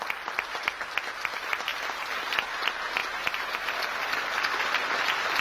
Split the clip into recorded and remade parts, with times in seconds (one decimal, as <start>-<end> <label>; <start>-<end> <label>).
0.0-5.4 recorded